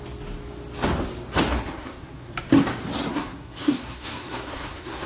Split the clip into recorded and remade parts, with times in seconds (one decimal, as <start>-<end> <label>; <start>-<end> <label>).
0.0-1.6 recorded; 1.6-2.3 remade; 2.3-3.1 recorded; 3.1-5.1 remade